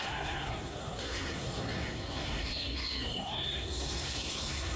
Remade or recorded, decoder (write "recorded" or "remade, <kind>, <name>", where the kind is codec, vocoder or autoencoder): remade, codec, SNAC